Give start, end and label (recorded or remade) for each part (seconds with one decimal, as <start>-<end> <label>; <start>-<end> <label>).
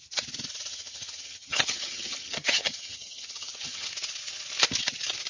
0.0-0.7 recorded; 0.7-3.9 remade; 3.9-5.3 recorded